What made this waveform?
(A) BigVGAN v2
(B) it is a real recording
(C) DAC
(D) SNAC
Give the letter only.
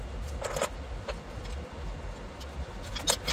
B